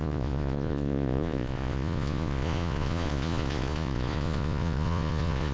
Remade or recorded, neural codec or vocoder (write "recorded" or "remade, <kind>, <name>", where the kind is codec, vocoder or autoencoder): remade, vocoder, Vocos